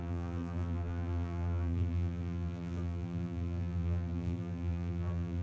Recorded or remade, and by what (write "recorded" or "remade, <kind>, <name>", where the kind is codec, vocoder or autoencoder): remade, vocoder, BigVGAN v2